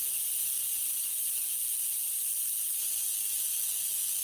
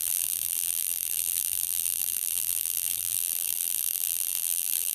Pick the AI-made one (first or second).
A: second